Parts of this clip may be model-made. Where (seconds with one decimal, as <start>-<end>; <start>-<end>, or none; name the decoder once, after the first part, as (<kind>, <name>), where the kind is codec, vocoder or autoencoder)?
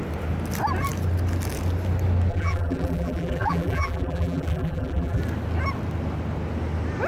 2.3-5.2 (vocoder, BigVGAN v2)